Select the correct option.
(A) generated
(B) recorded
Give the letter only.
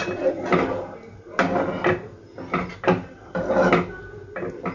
B